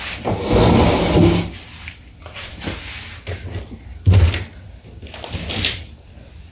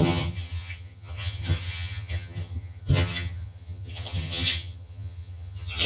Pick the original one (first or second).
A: first